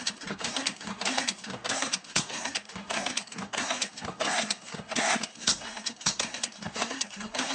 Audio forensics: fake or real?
fake